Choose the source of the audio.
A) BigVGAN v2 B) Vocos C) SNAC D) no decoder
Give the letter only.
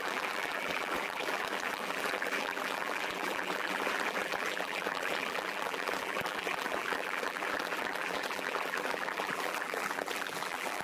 A